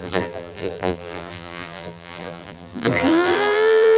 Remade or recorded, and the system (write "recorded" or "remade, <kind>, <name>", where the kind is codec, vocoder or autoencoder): remade, vocoder, BigVGAN v2